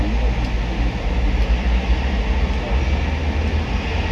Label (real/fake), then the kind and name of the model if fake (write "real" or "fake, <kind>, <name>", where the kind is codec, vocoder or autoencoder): real